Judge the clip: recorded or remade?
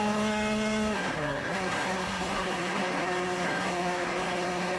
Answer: remade